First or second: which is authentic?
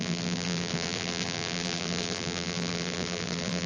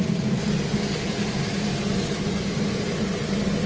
second